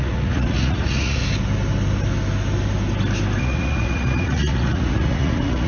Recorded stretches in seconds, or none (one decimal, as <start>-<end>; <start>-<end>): 1.2-3.4